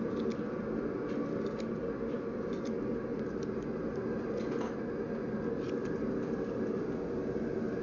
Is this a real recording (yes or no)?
yes